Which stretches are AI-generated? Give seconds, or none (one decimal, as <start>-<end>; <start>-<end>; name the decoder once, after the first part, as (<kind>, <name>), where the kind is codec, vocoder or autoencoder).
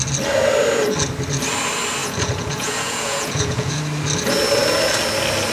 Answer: 2.0-3.8 (vocoder, Vocos)